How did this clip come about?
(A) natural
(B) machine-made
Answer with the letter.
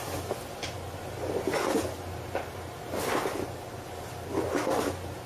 A